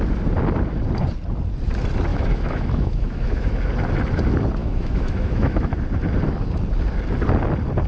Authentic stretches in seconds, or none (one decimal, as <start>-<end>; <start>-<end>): 0.0-2.1; 3.6-4.6; 5.7-7.9